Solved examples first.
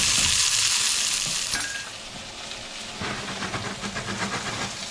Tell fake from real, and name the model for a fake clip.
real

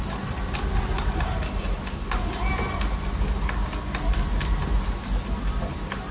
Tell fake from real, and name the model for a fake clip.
real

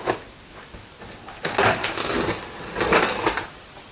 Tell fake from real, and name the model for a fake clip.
real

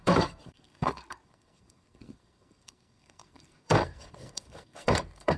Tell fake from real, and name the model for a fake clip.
fake, codec, SNAC